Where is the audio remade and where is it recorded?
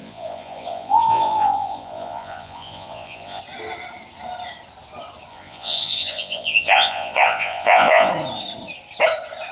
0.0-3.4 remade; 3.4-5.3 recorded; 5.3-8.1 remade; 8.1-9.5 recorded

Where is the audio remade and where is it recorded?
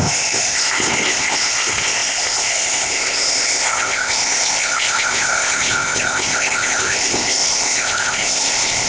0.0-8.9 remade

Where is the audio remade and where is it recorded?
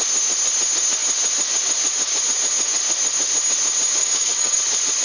0.0-4.0 recorded; 4.0-4.6 remade; 4.6-5.0 recorded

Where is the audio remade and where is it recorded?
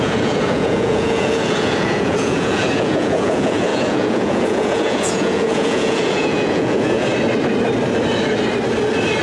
0.0-7.1 remade; 7.1-9.2 recorded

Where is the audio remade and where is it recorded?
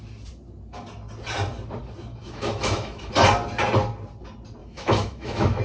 0.0-2.1 recorded; 2.1-3.1 remade; 3.1-4.6 recorded; 4.6-5.6 remade